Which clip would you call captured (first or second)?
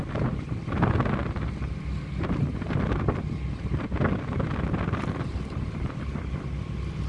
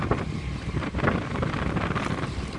first